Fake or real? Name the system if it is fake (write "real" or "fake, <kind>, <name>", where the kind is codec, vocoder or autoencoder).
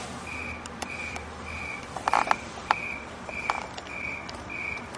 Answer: fake, vocoder, BigVGAN v2